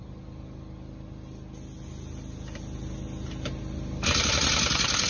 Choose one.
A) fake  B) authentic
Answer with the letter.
B